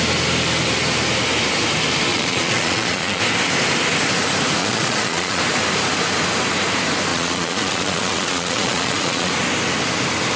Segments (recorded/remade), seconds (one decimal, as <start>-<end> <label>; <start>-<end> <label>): 0.0-2.1 recorded; 2.1-3.2 remade; 3.2-4.6 recorded; 4.6-5.4 remade; 5.4-7.1 recorded; 7.1-9.3 remade; 9.3-10.4 recorded